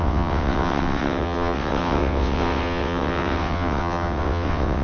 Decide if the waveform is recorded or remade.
remade